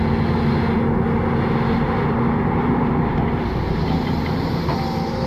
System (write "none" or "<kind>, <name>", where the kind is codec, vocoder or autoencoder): none